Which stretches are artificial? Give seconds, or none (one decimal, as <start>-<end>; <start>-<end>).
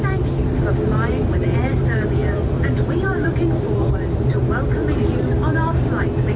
2.2-4.3; 4.8-6.4